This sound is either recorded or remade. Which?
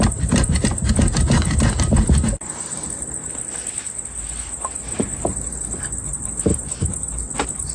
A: recorded